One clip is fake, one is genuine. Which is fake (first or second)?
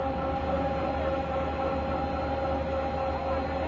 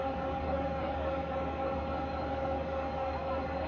second